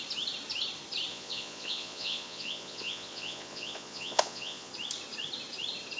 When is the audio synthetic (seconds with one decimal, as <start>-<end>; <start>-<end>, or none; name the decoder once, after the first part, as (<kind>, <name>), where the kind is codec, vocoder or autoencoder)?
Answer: 1.1-4.7 (vocoder, Vocos)